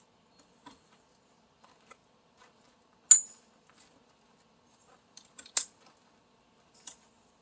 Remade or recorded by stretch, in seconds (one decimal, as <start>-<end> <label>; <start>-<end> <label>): 0.0-7.4 recorded